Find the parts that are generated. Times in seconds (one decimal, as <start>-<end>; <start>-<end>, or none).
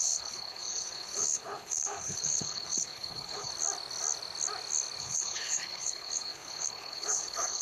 0.0-3.5; 5.0-7.6